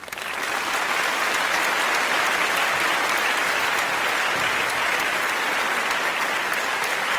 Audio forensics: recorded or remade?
recorded